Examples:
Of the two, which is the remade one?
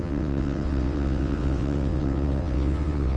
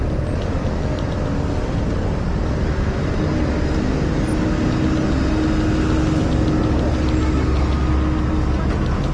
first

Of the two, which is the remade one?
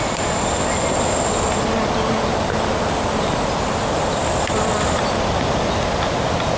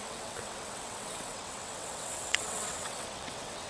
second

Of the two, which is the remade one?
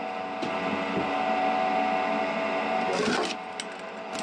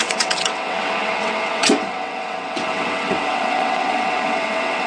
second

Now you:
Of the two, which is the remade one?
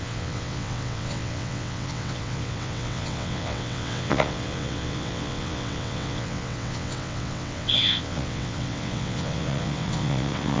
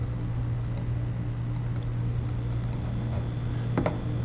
first